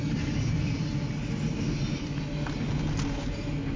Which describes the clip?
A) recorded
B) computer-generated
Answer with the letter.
A